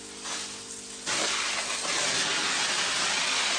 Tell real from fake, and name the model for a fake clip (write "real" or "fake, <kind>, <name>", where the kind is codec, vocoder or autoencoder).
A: real